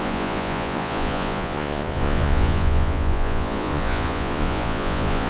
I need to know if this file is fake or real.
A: fake